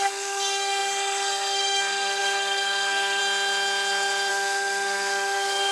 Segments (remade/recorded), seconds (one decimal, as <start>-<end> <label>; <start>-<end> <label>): 0.0-3.2 remade; 3.2-4.3 recorded; 4.3-5.7 remade